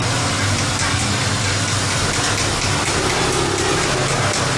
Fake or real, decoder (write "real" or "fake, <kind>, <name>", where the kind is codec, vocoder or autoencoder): real